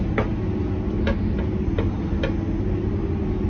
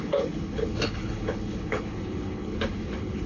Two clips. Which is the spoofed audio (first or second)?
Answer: second